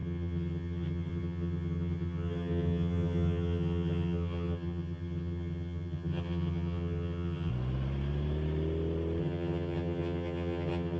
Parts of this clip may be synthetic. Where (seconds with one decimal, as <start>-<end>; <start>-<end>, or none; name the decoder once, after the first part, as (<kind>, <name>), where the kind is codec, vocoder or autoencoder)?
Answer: 0.0-7.5 (vocoder, HiFi-GAN); 9.2-11.0